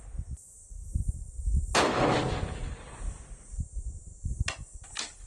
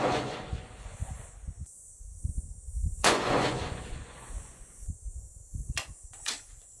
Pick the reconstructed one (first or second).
second